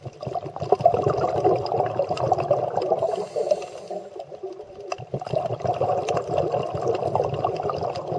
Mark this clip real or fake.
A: real